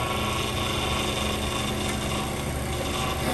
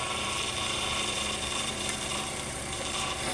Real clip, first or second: first